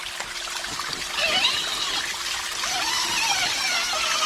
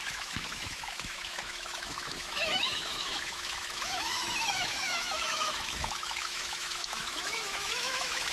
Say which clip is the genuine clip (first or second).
first